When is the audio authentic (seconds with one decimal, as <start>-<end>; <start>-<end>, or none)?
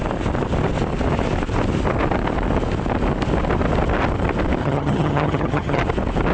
0.0-4.6; 5.8-6.3